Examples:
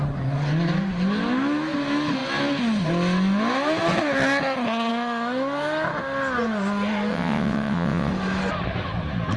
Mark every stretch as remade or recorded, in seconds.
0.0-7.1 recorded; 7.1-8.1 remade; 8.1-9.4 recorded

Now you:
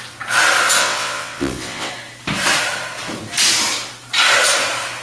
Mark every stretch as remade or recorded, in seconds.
0.0-0.8 recorded; 0.8-1.9 remade; 1.9-5.0 recorded

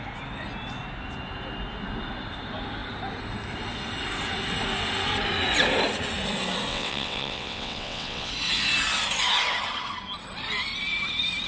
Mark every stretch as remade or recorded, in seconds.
0.0-6.7 recorded; 6.7-8.3 remade; 8.3-11.5 recorded

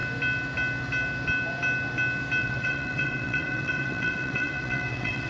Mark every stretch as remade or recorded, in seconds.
0.0-2.4 recorded; 2.4-5.3 remade

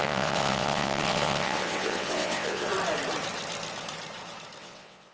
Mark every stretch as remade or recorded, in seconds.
0.0-2.7 remade; 2.7-4.6 recorded; 4.6-5.1 remade

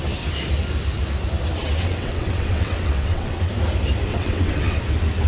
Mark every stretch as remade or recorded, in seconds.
0.0-1.6 recorded; 1.6-3.5 remade; 3.5-4.1 recorded; 4.1-4.8 remade; 4.8-5.3 recorded